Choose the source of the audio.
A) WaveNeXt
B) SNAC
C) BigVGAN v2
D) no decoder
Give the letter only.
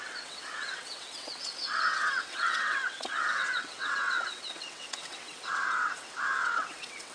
A